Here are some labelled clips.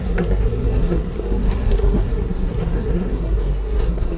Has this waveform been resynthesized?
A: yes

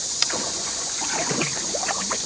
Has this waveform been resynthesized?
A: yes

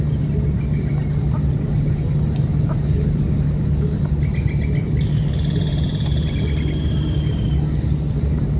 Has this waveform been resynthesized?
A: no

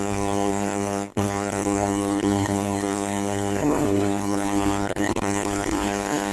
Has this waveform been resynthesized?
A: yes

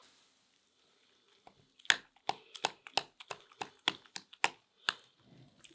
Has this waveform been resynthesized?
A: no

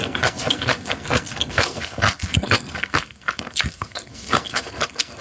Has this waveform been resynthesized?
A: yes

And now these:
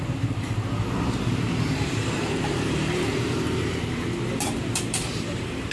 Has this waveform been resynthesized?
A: yes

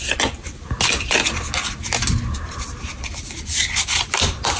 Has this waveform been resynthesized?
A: no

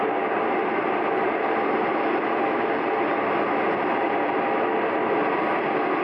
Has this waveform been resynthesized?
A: no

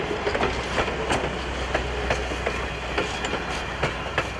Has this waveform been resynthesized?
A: no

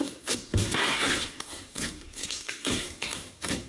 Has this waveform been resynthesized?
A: yes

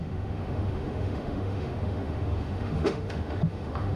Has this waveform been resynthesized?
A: yes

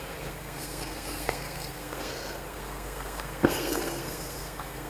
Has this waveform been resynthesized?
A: yes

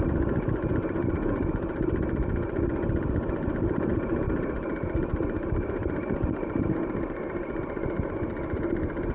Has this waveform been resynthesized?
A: no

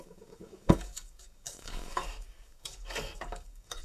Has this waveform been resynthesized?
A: yes